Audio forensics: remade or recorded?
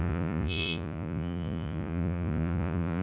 remade